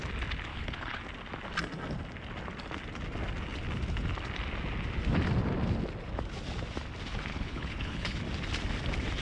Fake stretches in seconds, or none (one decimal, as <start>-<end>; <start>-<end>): 0.5-1.0; 7.3-8.2